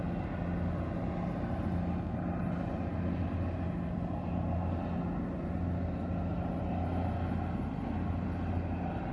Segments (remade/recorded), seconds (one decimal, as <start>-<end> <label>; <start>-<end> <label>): 0.0-9.1 recorded